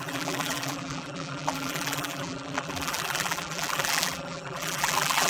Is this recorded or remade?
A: remade